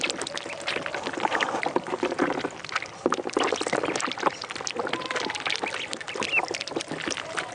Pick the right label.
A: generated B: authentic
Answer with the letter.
B